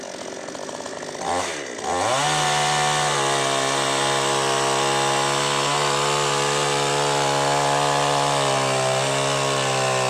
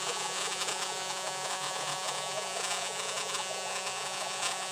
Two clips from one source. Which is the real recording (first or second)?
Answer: first